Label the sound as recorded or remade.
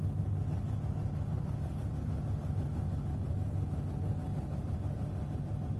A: recorded